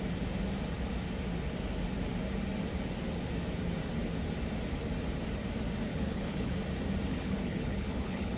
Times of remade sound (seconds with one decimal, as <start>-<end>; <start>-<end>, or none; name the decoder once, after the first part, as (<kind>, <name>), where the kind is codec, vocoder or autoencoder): 5.9-6.5 (codec, HILCodec); 7.1-8.4